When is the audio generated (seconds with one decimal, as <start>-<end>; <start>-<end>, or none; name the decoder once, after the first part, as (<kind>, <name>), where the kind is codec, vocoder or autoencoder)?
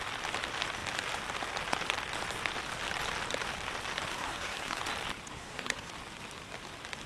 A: 4.1-4.8 (codec, SNAC); 5.3-5.9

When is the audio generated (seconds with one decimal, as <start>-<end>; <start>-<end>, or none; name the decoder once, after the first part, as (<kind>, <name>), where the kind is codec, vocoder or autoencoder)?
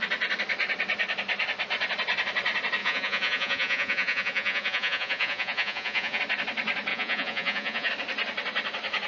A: 2.8-6.2 (vocoder, Vocos); 6.9-7.9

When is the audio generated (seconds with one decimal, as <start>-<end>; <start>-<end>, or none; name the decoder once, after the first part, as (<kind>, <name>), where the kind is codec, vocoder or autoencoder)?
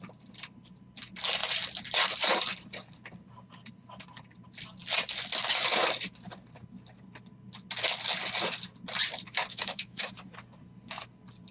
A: 9.5-10.1 (autoencoder, DAC-VAE)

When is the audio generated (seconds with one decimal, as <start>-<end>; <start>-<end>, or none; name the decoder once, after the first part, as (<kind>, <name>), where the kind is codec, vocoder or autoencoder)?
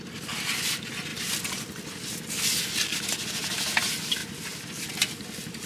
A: none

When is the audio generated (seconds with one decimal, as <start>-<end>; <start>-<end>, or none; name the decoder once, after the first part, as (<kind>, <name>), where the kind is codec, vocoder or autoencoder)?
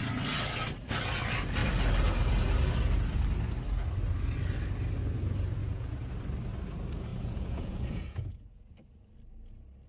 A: 5.6-6.1 (vocoder, Vocos); 7.1-8.7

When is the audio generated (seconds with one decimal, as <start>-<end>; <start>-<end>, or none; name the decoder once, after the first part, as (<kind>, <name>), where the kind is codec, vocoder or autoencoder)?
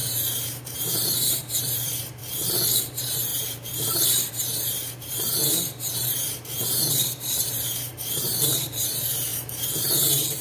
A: 0.0-2.2 (vocoder, BigVGAN v2); 2.8-10.4